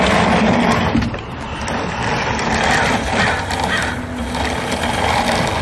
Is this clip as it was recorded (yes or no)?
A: yes